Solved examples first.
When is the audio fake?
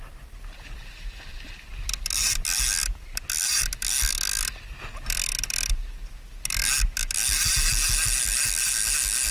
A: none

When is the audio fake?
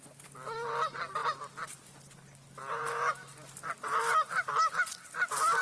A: none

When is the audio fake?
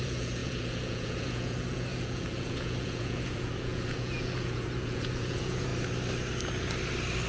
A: 0.0-5.7 (vocoder, Vocos)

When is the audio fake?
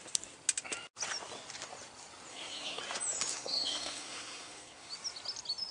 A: 2.3-2.8 (codec, SNAC); 3.3-4.9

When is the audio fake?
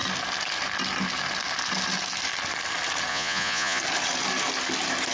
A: 3.1-3.8 (vocoder, Vocos)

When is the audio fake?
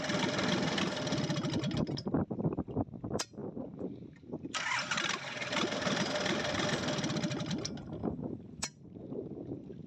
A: 3.4-3.9 (vocoder, BigVGAN v2)